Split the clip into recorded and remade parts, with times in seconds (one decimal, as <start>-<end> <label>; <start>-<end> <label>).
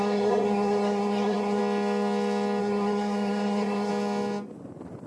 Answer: 0.0-1.6 remade; 1.6-2.6 recorded; 2.6-3.9 remade; 3.9-5.1 recorded